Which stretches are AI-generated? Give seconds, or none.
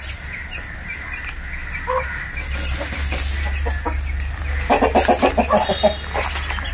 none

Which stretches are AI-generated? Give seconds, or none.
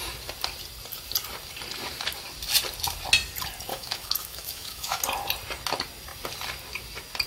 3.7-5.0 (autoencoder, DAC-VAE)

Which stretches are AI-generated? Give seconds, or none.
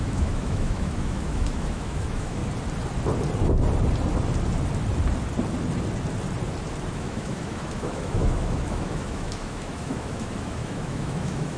0.0-2.4 (autoencoder, DAC-VAE); 6.9-11.6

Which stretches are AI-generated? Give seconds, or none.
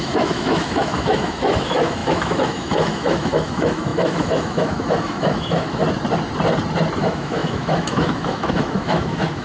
0.0-5.8 (autoencoder, DAC-VAE); 7.0-9.4